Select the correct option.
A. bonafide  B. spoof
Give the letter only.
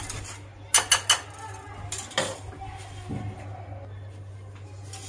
A